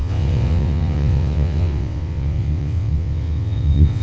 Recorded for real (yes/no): no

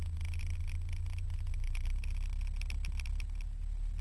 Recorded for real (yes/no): yes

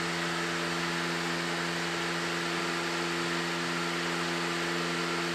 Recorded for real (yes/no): yes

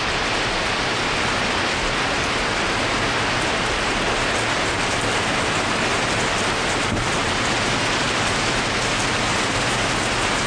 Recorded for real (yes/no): yes